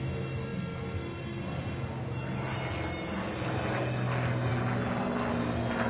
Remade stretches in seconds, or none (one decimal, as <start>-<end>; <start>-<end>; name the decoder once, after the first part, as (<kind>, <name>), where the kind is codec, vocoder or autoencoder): none